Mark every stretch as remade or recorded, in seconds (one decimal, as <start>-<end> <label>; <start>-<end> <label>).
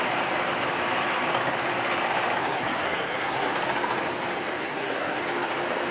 0.0-2.4 recorded; 2.4-3.5 remade; 3.5-4.6 recorded; 4.6-5.2 remade; 5.2-5.9 recorded